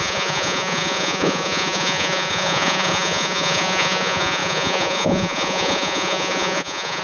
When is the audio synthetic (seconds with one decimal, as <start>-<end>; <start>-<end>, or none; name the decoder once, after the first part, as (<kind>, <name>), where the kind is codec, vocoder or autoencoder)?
0.0-7.0 (vocoder, Vocos)